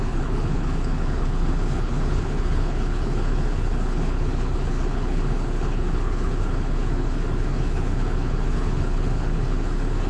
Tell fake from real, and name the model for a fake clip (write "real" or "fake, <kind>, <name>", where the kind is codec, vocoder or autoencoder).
fake, codec, HILCodec